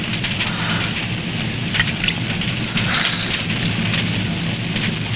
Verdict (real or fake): real